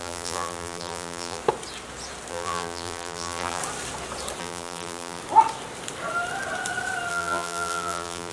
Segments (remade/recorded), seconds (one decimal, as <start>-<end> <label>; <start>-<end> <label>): 0.0-1.4 remade; 1.4-2.3 recorded; 2.3-3.6 remade; 3.6-4.4 recorded; 4.4-5.2 remade; 5.2-7.1 recorded; 7.1-8.3 remade